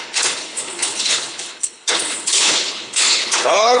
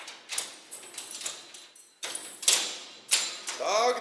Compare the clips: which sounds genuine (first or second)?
second